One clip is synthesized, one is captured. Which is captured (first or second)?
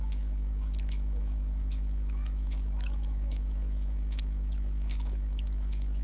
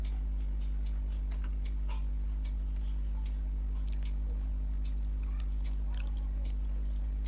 second